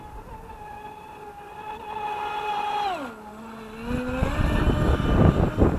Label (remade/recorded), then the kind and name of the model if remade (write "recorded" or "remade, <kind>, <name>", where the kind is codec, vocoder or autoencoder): recorded